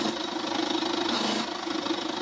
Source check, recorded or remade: recorded